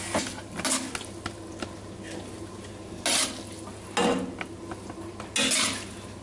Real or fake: real